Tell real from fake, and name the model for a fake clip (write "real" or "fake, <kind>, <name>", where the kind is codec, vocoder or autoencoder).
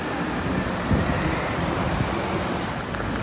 real